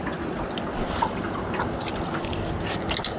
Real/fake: real